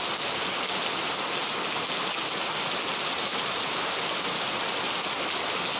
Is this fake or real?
real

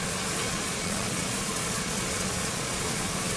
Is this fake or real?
fake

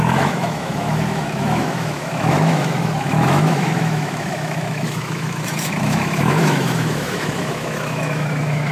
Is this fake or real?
fake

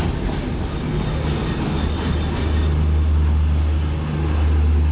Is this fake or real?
real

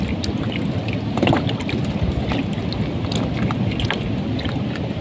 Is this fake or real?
real